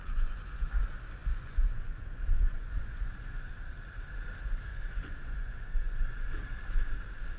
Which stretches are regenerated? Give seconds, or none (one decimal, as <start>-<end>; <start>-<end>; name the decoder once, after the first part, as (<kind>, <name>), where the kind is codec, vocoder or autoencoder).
0.0-0.8 (vocoder, Vocos); 1.3-3.5; 4.7-6.3